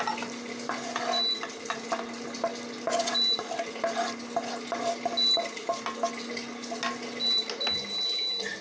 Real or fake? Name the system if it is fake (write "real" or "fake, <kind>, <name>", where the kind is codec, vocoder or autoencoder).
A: real